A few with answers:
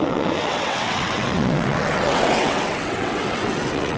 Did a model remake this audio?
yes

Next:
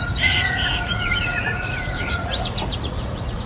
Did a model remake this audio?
yes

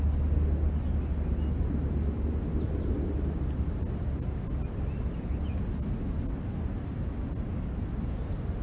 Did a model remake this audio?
no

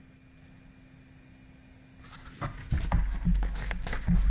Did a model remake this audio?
no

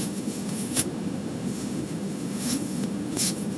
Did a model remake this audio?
yes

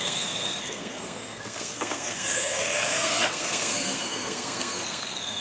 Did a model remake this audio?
yes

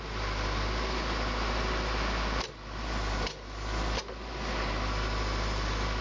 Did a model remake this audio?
no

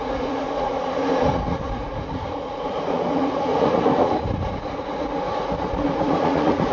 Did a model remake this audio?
yes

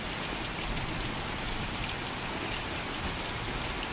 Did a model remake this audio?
no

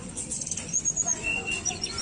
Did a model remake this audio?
yes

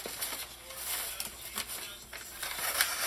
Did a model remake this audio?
no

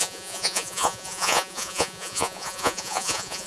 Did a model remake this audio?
yes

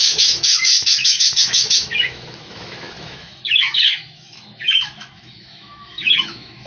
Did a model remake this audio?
yes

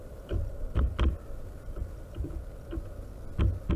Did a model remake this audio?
no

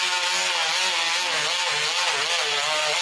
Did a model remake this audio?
no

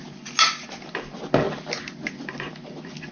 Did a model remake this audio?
no